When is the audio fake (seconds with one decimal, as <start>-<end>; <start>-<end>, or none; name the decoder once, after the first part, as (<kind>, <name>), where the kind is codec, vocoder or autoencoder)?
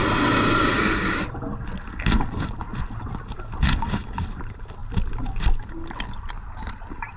none